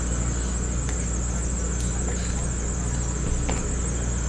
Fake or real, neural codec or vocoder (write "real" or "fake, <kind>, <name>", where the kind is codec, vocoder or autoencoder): real